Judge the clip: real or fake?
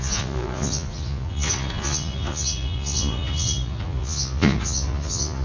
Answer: fake